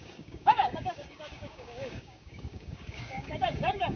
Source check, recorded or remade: remade